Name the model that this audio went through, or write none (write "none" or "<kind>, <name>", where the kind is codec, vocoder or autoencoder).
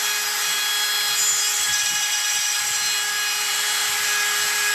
none